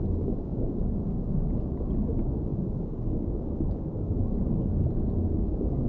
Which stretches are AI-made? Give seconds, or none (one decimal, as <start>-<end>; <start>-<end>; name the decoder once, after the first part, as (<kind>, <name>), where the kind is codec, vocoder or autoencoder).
0.0-5.9 (codec, DAC)